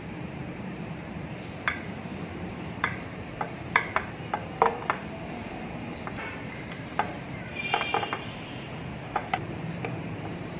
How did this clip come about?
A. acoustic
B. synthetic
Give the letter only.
B